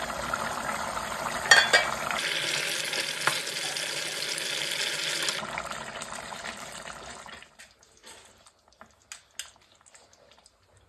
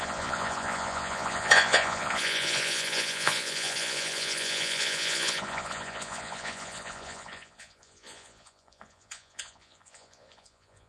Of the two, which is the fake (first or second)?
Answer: second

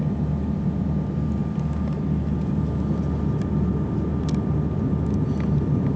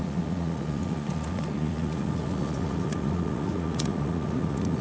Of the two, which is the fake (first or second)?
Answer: second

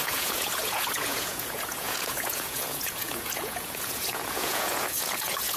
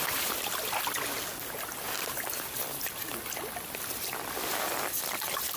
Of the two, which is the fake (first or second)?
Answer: first